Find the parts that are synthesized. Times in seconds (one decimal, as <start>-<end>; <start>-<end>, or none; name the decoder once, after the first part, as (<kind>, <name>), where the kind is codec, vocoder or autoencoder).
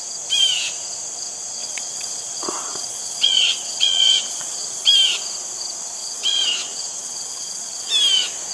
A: 1.6-4.9 (vocoder, WaveNeXt); 6.0-7.9